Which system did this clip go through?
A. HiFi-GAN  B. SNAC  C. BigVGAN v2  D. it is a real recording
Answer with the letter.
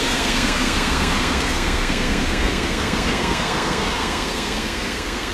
B